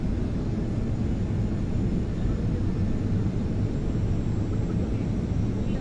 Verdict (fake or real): real